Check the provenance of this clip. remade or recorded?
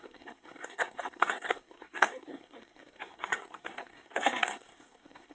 remade